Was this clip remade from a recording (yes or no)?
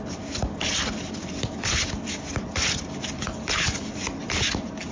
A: no